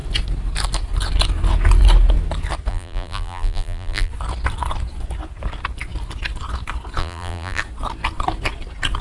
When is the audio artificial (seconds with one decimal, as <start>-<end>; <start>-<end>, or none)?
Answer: 2.7-4.1; 7.0-7.6